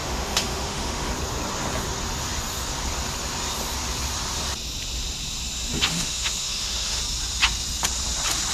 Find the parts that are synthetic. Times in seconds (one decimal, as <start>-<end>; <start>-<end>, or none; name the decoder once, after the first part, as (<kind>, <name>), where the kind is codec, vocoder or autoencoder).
0.0-1.1 (autoencoder, DAC-VAE); 5.9-7.0